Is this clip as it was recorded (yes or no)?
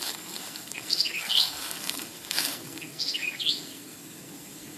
no